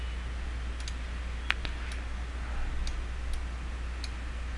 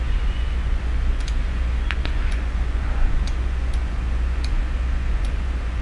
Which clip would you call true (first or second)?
first